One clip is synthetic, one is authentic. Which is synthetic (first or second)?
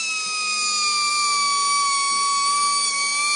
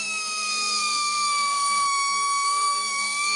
second